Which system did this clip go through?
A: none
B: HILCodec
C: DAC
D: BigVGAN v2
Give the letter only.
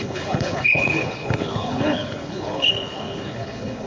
B